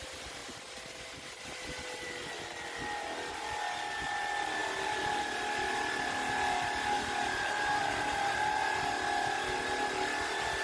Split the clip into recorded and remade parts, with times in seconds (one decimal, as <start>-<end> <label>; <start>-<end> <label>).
0.0-10.6 recorded